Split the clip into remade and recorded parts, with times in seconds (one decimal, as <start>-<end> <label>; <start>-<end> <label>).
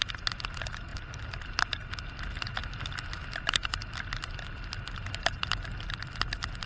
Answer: 0.0-6.7 recorded